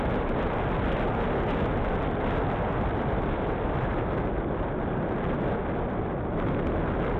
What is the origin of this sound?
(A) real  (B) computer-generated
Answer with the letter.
A